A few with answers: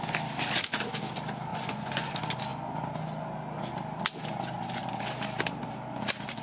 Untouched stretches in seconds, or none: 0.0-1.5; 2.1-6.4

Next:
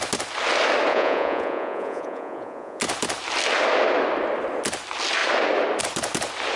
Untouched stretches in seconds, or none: 0.0-0.9; 2.8-6.6

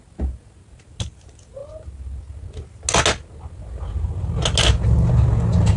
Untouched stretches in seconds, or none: 0.0-5.8

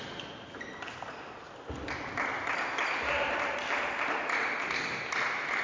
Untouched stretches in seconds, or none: 0.0-5.6

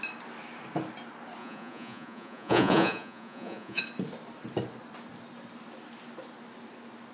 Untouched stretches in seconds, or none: 0.0-1.4; 3.8-7.1